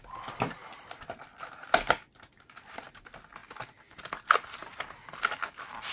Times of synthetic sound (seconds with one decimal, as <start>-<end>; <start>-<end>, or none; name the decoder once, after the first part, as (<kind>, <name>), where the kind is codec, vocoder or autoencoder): none